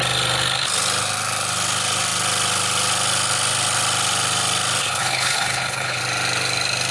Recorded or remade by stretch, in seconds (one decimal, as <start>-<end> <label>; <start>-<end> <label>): 0.0-4.8 recorded; 4.8-6.0 remade; 6.0-6.9 recorded